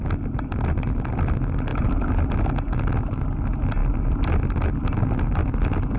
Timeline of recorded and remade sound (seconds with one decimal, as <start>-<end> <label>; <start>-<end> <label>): 0.0-6.0 recorded